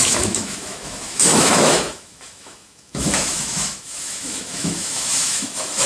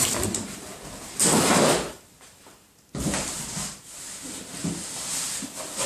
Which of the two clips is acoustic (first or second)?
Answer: second